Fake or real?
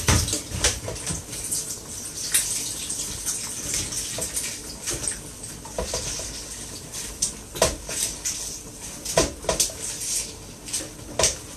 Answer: real